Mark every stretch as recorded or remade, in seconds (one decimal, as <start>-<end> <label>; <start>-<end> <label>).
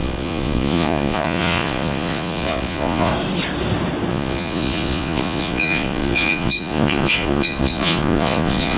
0.0-3.1 remade; 3.1-4.1 recorded; 4.1-8.8 remade